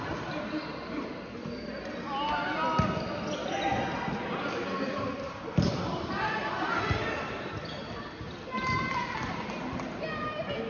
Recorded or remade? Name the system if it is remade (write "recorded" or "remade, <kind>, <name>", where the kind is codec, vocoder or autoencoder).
recorded